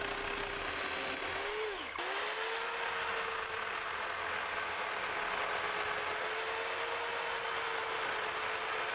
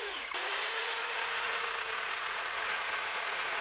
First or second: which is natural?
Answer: first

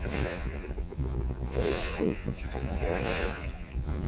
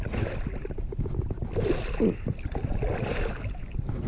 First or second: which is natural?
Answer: second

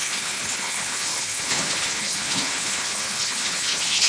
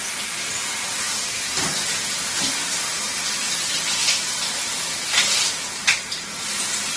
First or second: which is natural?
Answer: second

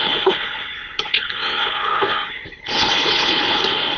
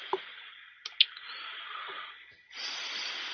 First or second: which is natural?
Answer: second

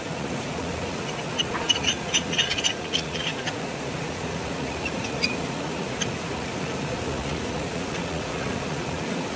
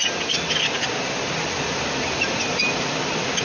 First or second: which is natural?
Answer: second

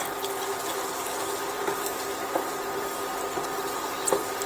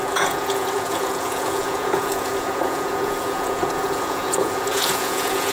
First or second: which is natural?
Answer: first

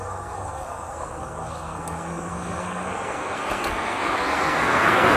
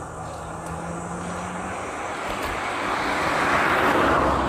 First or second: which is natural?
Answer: second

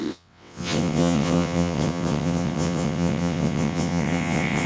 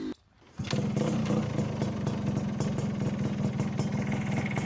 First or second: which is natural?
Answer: second